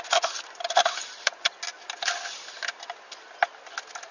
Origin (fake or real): real